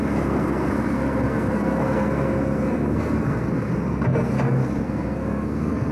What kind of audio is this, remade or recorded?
remade